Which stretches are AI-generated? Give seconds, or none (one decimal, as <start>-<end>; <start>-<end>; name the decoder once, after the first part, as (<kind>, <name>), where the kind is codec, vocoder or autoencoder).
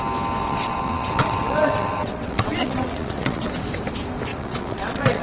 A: 0.4-3.5 (vocoder, WaveNeXt); 4.3-5.2